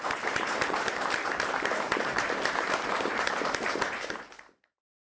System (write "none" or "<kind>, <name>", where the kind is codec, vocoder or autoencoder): vocoder, BigVGAN v2